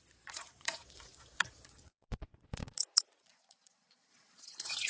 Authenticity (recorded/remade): remade